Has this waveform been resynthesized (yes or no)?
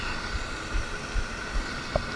no